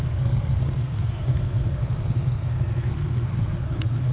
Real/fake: fake